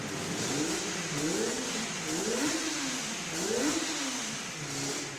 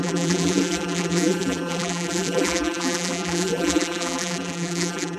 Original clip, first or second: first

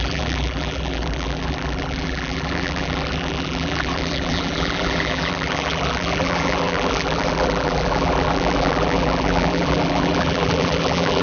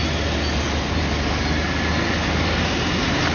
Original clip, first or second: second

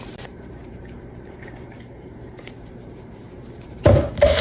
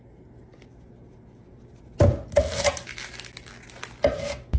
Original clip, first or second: second